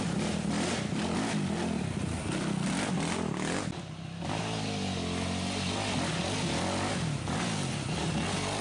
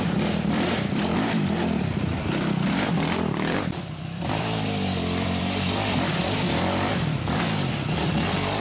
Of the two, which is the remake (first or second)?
second